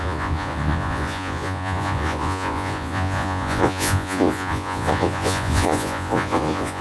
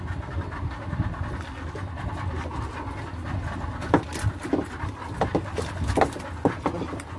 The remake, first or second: first